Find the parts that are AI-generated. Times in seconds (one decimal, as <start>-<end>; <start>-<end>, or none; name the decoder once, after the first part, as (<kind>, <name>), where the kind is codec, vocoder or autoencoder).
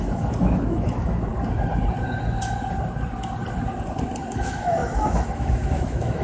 0.0-1.3 (autoencoder, DAC-VAE); 4.3-6.2